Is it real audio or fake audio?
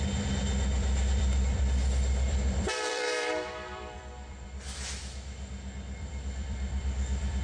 fake